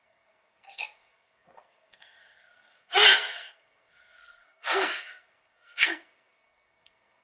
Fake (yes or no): yes